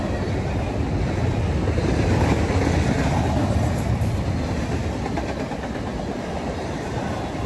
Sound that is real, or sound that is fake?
real